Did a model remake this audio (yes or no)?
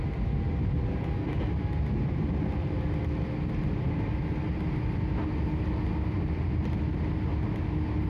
no